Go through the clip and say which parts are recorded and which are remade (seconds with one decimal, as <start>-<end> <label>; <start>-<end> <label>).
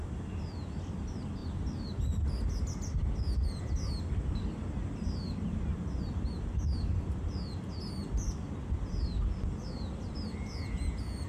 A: 0.0-11.3 recorded